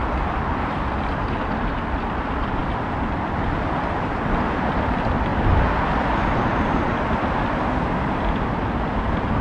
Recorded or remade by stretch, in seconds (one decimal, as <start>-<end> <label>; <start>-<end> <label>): 0.0-5.3 remade; 5.3-6.1 recorded; 6.1-9.4 remade